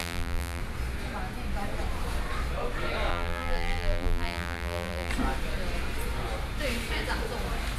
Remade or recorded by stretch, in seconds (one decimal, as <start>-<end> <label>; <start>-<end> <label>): 0.0-0.6 remade; 0.6-3.1 recorded; 3.1-5.1 remade; 5.1-7.8 recorded